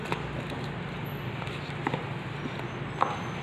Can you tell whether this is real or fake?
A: real